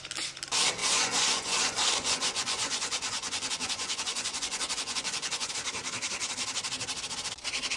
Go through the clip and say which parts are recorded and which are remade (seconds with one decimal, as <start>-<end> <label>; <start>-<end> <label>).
0.0-0.8 recorded; 0.8-5.5 remade; 5.5-7.8 recorded